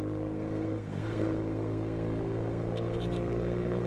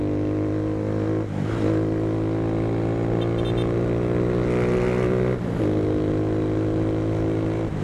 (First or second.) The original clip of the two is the second